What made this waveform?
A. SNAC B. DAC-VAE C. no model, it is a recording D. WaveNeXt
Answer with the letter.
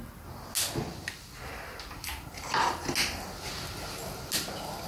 C